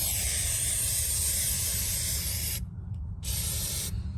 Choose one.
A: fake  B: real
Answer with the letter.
A